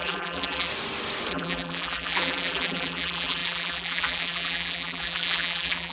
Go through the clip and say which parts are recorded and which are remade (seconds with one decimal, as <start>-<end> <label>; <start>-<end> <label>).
0.0-0.7 remade; 0.7-1.3 recorded; 1.3-5.9 remade